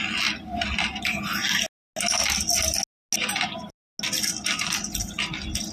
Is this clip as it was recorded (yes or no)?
yes